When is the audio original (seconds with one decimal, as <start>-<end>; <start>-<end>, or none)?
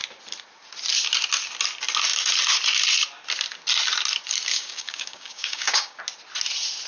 0.0-4.5; 6.0-6.9